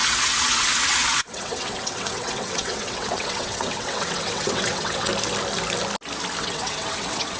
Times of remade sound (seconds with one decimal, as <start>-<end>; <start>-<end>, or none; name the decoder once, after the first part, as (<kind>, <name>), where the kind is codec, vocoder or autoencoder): 0.0-5.1 (vocoder, WaveNeXt); 6.4-7.4